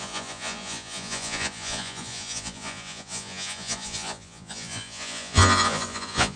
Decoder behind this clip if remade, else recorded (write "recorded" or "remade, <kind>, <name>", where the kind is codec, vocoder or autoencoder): remade, vocoder, Vocos